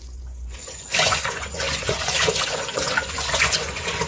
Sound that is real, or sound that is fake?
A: fake